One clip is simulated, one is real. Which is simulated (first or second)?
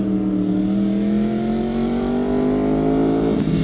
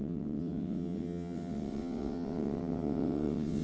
second